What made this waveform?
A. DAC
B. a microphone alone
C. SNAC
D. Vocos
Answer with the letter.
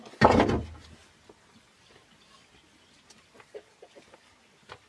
B